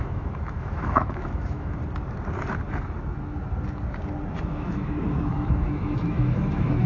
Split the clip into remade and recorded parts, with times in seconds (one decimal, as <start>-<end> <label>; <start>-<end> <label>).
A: 0.0-1.8 remade; 1.8-4.4 recorded; 4.4-6.9 remade